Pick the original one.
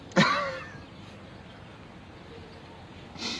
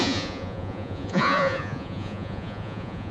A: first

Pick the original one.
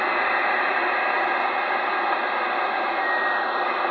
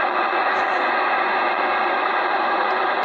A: first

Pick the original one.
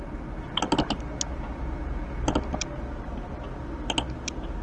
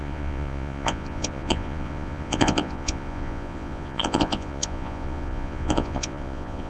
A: first